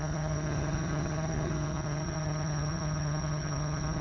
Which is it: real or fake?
fake